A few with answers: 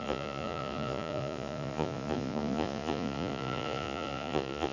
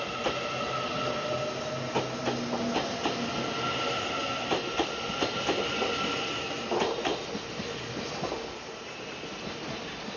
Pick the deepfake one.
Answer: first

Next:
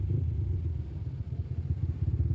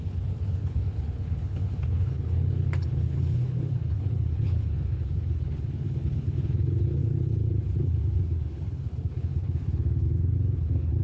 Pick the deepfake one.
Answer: second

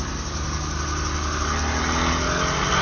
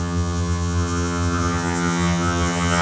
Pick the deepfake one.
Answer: second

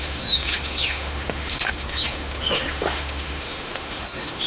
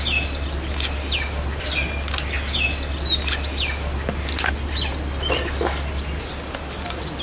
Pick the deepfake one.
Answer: first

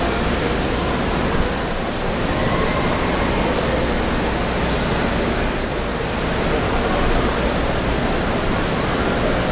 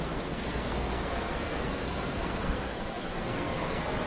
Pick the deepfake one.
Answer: second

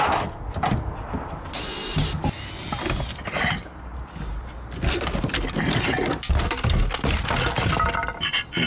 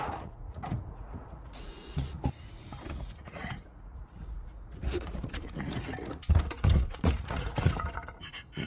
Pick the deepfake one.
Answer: second